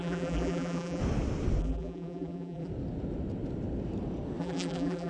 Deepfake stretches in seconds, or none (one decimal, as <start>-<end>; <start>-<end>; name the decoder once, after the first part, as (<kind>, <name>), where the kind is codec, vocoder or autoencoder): 0.0-1.0 (vocoder, BigVGAN v2); 1.6-2.7; 4.4-5.1